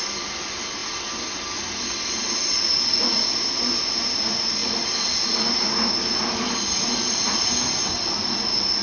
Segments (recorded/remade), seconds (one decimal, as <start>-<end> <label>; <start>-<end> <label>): 0.0-8.8 recorded